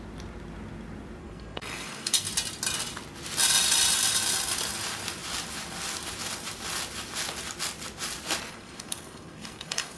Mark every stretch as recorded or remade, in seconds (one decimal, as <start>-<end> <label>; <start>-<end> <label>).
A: 0.0-1.2 recorded; 1.2-2.3 remade; 2.3-8.5 recorded; 8.5-10.0 remade